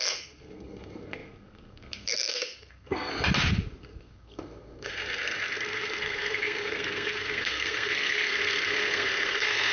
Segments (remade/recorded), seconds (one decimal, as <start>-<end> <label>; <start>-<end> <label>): 0.0-3.1 remade; 3.1-3.8 recorded; 3.8-9.7 remade